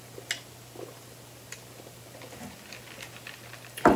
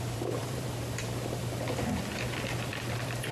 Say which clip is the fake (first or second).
second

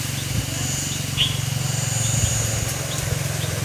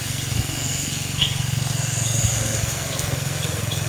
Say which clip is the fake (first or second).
second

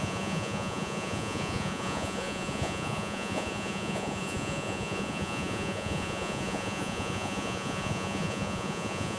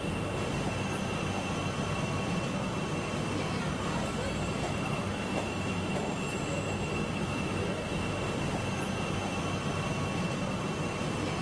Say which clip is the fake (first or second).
first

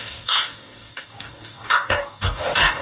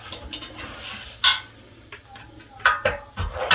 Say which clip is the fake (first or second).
first